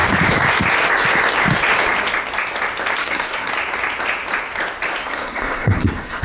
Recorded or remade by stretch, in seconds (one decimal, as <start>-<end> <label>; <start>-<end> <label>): 0.0-3.0 recorded; 3.0-3.5 remade; 3.5-5.0 recorded; 5.0-6.2 remade